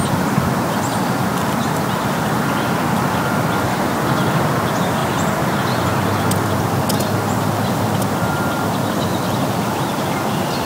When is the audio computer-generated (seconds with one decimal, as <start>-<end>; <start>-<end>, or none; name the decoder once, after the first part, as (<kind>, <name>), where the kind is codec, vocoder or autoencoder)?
none

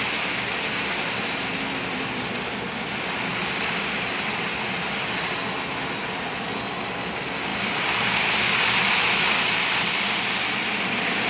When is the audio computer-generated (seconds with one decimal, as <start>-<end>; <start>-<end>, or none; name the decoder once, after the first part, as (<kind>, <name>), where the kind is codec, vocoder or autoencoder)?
none

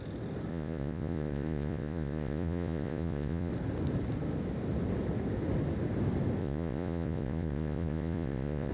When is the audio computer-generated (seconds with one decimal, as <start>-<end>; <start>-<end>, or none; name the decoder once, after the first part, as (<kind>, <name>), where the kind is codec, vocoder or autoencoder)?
0.5-3.5 (vocoder, Vocos); 6.4-8.7

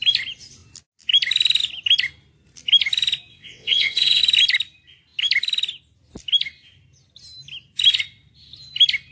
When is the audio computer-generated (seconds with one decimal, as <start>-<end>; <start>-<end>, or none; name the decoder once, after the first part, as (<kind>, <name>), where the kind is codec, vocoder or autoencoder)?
3.3-4.2 (vocoder, WaveNeXt)

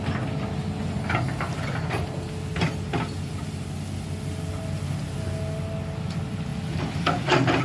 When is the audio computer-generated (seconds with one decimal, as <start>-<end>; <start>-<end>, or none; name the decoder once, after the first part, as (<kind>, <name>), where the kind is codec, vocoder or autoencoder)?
none